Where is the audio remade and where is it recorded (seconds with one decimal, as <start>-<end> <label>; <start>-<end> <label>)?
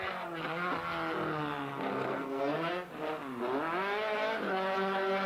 0.0-1.7 recorded; 1.7-2.9 remade; 2.9-5.3 recorded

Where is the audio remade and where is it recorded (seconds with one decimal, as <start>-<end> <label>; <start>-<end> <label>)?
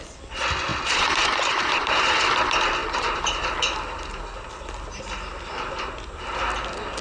0.0-0.7 recorded; 0.7-2.1 remade; 2.1-2.8 recorded; 2.8-4.2 remade; 4.2-7.0 recorded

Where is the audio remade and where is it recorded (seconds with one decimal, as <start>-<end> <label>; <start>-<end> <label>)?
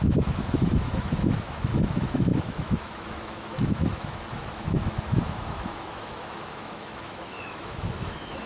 0.0-8.5 remade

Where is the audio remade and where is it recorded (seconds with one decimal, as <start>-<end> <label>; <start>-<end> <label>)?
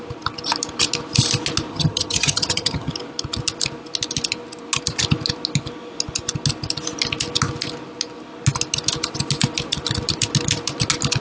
0.0-1.7 recorded; 1.7-2.9 remade; 2.9-11.2 recorded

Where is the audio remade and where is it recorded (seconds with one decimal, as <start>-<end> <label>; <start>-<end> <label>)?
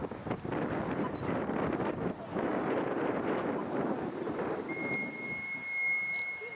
0.0-6.5 recorded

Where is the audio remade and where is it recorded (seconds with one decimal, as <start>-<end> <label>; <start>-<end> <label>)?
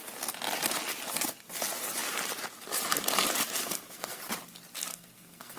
0.0-3.6 recorded; 3.6-4.2 remade; 4.2-4.9 recorded; 4.9-5.6 remade